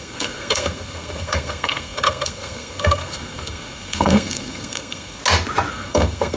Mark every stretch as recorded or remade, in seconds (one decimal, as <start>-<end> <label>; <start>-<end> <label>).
0.0-5.2 remade; 5.2-5.7 recorded; 5.7-6.4 remade